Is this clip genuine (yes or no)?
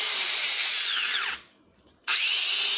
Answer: no